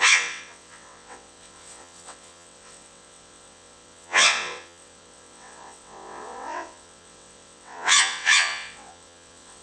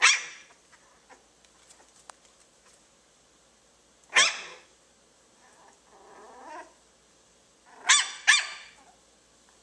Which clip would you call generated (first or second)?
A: first